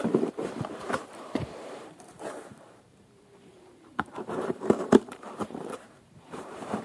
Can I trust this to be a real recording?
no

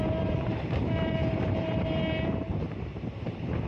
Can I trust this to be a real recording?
no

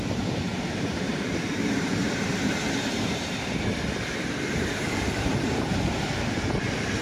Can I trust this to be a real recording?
no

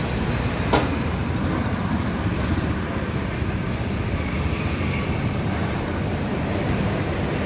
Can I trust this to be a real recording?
yes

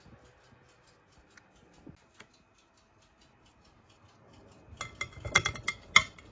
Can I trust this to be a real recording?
yes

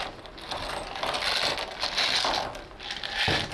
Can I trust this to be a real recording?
yes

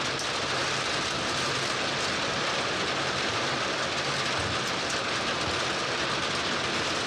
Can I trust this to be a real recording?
yes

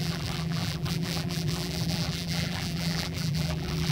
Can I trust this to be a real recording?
no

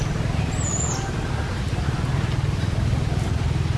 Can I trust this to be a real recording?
yes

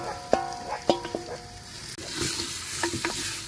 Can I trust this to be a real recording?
yes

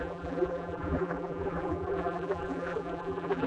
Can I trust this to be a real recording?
no